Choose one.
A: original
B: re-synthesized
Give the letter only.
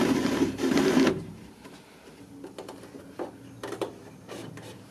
B